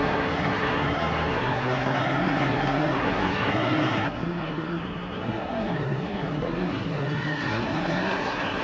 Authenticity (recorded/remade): remade